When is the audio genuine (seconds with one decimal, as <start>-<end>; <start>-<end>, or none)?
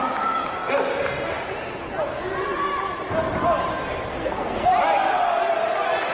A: 0.0-4.1; 4.7-6.1